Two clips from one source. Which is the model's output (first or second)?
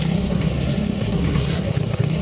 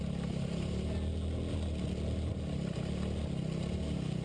first